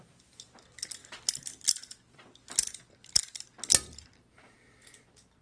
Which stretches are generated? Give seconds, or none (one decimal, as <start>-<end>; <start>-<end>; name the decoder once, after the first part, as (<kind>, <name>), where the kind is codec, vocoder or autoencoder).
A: 1.0-1.7 (vocoder, BigVGAN v2)